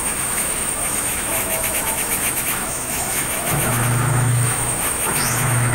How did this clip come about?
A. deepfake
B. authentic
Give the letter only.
A